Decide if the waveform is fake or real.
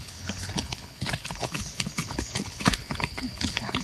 fake